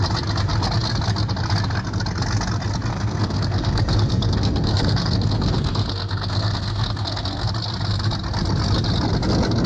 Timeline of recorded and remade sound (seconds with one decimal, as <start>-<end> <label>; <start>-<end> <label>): 0.0-2.9 recorded; 2.9-7.5 remade; 7.5-9.7 recorded